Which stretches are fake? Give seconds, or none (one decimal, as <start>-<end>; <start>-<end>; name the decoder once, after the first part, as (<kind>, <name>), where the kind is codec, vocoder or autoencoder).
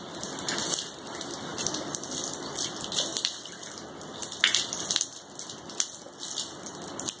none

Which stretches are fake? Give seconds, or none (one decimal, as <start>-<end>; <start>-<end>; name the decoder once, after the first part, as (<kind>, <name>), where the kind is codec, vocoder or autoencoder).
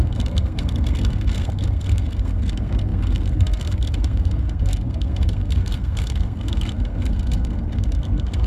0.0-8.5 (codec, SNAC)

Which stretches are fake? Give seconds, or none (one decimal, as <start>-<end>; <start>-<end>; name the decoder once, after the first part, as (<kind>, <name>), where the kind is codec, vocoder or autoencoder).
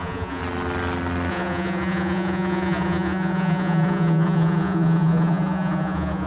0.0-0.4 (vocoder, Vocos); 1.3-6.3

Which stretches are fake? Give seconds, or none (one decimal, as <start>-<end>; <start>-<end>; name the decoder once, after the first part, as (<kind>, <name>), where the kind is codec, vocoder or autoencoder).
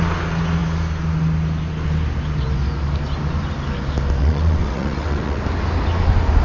4.2-5.4 (vocoder, WaveNeXt)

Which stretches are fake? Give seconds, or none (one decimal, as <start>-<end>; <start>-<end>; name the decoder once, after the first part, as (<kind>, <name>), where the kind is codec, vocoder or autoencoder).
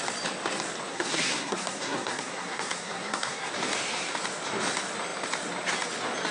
0.9-3.5 (codec, SNAC)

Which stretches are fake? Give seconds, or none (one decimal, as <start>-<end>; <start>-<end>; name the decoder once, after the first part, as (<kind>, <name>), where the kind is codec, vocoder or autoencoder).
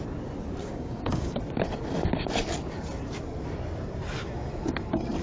0.6-1.4 (codec, DAC)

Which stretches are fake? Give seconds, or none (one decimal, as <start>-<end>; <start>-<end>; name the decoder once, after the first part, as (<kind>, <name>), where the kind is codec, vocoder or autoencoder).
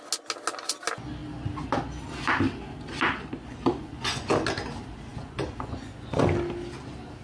3.5-4.3 (vocoder, Vocos); 5.1-6.2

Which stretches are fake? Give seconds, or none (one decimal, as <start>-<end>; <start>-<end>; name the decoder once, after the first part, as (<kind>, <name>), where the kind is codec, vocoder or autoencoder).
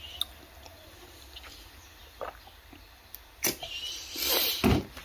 none